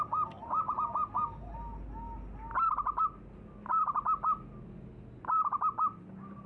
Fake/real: real